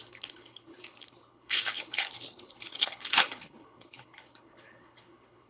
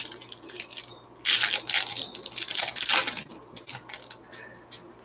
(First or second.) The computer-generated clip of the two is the first